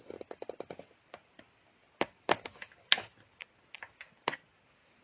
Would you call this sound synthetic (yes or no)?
no